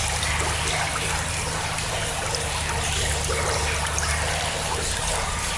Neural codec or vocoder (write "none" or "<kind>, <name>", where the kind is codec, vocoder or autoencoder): none